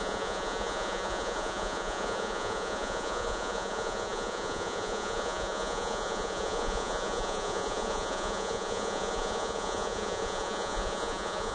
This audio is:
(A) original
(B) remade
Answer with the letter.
B